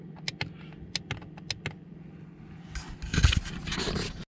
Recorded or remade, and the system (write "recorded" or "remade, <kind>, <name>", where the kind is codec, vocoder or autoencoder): recorded